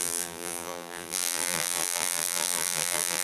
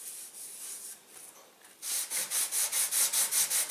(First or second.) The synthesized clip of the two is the first